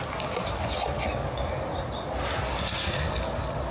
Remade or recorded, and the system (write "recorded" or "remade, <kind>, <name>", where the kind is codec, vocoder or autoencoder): recorded